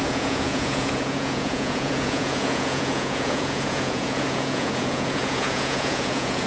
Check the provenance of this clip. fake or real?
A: fake